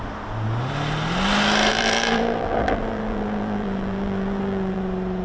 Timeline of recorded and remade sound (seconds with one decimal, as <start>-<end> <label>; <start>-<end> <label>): 0.0-1.7 recorded; 1.7-4.8 remade; 4.8-5.2 recorded